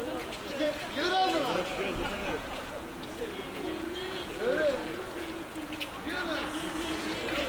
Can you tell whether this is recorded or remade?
remade